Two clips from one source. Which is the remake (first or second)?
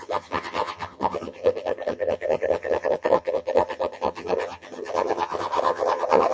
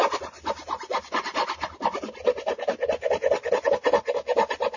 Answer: first